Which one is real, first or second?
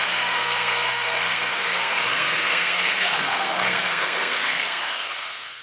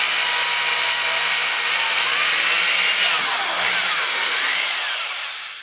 second